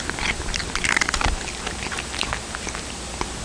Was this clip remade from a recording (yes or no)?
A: no